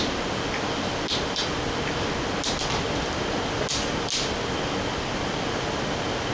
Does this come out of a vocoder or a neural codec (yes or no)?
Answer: no